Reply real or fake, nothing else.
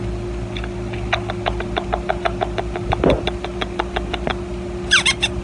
real